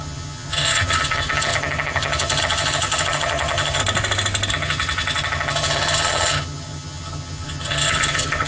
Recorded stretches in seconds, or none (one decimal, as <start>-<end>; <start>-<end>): 3.8-4.5